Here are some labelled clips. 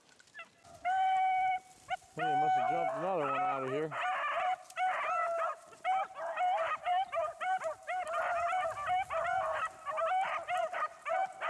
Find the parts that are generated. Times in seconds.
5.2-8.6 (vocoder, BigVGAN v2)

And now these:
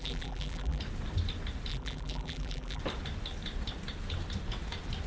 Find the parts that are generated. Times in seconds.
0.0-0.8 (vocoder, BigVGAN v2); 1.7-2.8